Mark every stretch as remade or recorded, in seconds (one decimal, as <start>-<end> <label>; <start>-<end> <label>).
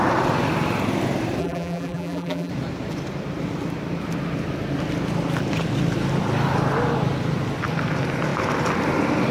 0.0-1.4 recorded; 1.4-2.5 remade; 2.5-9.3 recorded